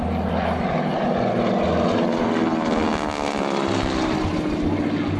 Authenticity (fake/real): real